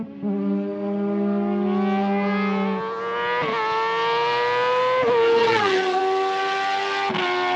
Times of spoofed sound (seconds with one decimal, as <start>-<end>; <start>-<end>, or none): 5.4-6.0